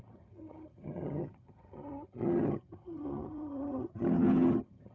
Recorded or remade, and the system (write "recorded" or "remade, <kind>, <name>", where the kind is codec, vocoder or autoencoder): remade, vocoder, HiFi-GAN